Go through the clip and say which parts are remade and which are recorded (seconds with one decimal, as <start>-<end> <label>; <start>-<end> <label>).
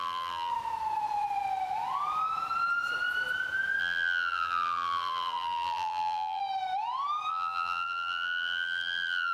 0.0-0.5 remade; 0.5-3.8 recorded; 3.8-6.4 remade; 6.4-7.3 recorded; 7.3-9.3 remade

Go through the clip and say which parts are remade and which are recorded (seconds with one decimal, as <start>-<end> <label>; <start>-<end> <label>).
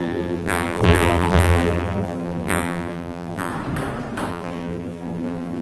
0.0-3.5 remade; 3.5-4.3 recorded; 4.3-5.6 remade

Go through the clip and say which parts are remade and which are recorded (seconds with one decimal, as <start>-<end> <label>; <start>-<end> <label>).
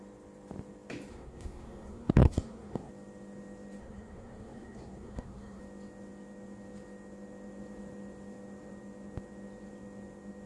0.0-1.1 recorded; 1.1-2.9 remade; 2.9-3.8 recorded; 3.8-5.6 remade; 5.6-10.5 recorded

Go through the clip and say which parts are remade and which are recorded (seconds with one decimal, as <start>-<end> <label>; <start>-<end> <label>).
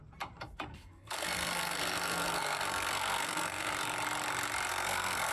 0.0-0.7 recorded; 0.7-3.7 remade; 3.7-4.7 recorded; 4.7-5.3 remade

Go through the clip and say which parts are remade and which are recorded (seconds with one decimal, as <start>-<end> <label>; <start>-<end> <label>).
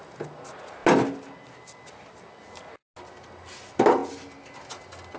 0.0-5.2 recorded